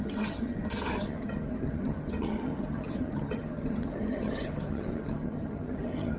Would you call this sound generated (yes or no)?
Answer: yes